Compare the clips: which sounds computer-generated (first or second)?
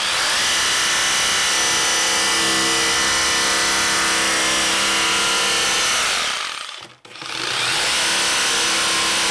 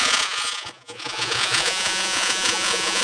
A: second